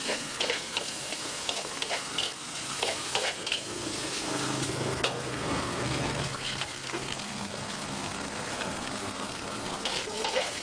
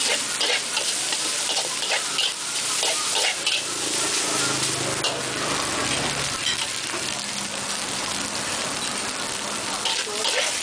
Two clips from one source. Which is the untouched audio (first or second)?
second